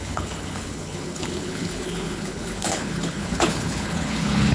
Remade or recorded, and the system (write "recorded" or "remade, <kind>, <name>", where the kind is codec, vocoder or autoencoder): remade, codec, HILCodec